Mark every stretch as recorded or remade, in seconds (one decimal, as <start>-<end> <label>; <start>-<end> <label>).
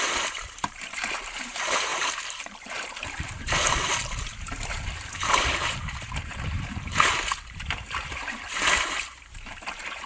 0.0-6.9 remade; 6.9-7.6 recorded; 7.6-10.1 remade